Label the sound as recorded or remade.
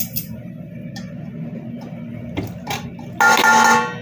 recorded